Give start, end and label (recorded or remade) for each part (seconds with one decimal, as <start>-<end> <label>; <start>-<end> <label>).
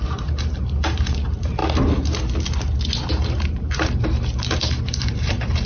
0.0-1.6 remade; 1.6-3.1 recorded; 3.1-5.7 remade